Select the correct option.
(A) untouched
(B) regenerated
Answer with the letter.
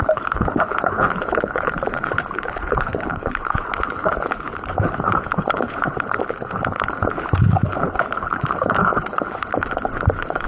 B